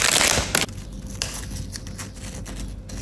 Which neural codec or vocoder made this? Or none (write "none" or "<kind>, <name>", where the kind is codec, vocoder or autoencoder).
none